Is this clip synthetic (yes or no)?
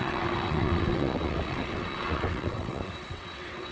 yes